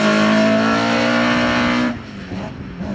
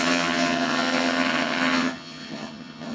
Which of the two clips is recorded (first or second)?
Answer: first